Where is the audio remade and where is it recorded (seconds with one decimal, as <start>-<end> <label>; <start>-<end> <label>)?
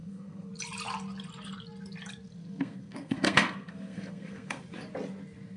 0.0-0.5 remade; 0.5-2.4 recorded; 2.4-4.6 remade; 4.6-5.6 recorded